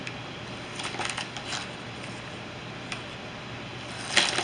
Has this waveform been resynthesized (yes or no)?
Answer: no